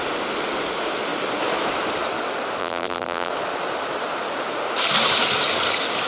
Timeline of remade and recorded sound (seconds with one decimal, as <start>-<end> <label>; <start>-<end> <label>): 0.0-2.6 recorded; 2.6-3.3 remade; 3.3-6.1 recorded